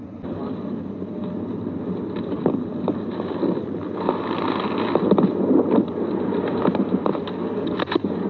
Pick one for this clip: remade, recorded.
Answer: remade